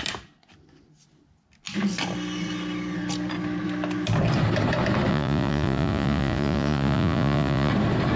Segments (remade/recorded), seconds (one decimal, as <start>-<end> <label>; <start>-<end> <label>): 0.0-5.1 recorded; 5.1-7.7 remade; 7.7-8.2 recorded